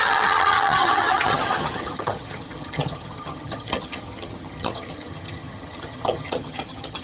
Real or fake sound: fake